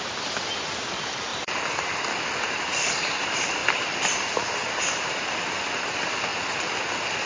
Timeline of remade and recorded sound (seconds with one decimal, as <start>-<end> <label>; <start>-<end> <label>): 0.0-7.3 recorded